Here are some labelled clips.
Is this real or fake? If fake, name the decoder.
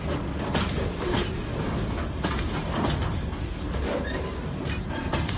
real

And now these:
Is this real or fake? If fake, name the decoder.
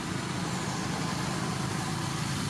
real